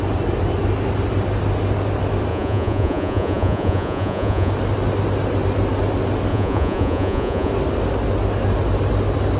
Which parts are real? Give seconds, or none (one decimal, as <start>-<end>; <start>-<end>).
0.0-2.3; 4.5-6.3; 7.5-9.4